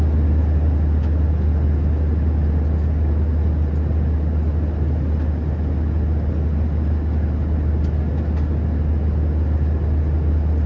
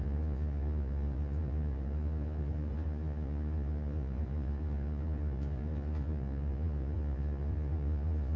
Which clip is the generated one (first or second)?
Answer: second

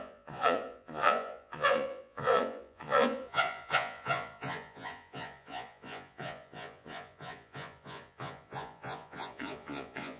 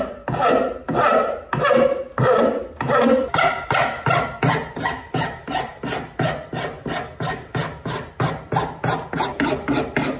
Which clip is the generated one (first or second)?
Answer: first